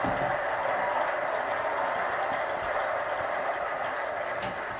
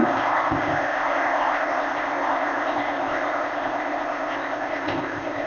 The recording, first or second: first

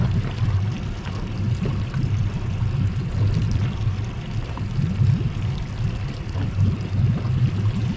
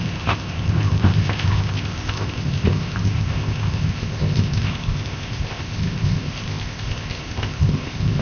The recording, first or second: first